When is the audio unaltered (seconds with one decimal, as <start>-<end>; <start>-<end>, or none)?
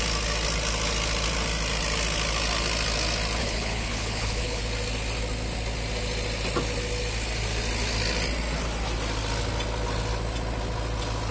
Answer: 0.0-3.4; 4.6-11.3